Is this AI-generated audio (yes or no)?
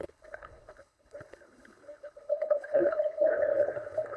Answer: yes